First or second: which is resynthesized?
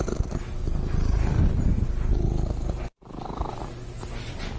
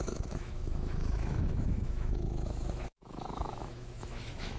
second